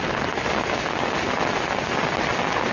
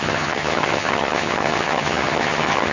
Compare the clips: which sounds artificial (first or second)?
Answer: second